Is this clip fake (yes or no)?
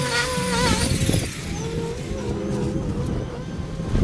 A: no